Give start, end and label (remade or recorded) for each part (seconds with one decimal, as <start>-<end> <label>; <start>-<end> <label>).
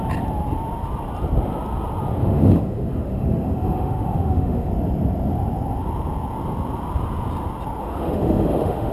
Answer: 0.0-2.2 recorded; 2.2-4.7 remade; 4.7-7.8 recorded; 7.8-8.9 remade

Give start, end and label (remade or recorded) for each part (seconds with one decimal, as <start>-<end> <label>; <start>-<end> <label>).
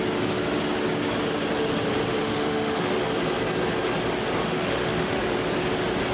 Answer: 0.0-2.2 recorded; 2.2-2.9 remade; 2.9-4.4 recorded; 4.4-5.2 remade; 5.2-6.1 recorded